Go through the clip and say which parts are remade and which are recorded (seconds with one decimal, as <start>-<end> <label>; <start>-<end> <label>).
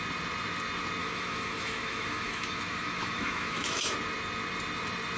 0.0-1.0 recorded; 1.0-3.9 remade; 3.9-5.2 recorded